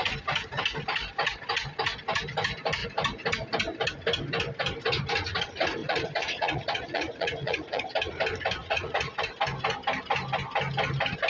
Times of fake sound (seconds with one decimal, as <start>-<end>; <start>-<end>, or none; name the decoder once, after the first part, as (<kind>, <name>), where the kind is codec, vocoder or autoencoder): 5.8-7.8 (vocoder, Vocos); 8.6-9.2